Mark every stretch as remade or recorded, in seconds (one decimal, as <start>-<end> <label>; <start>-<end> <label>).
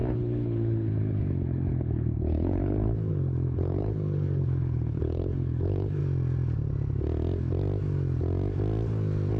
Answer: 0.0-6.0 remade; 6.0-9.4 recorded